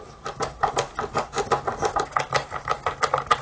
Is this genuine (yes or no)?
yes